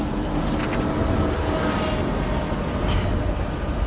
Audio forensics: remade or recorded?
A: recorded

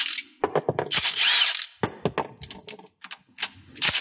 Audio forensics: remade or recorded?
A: recorded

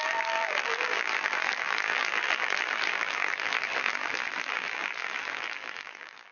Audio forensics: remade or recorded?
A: remade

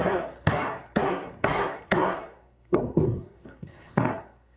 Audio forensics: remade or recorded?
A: remade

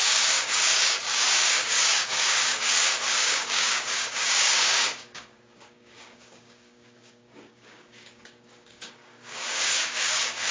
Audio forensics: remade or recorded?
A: remade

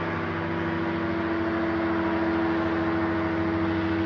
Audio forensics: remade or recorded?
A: recorded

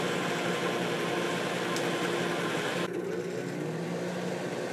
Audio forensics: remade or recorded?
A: recorded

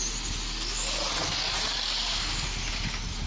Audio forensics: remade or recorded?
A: recorded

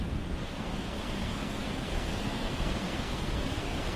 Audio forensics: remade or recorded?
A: remade